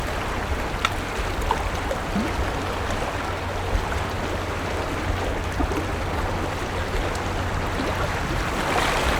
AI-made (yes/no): no